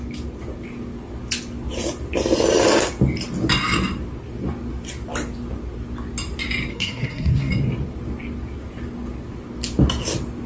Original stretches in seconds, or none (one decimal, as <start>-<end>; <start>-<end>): 0.0-6.7; 7.5-10.5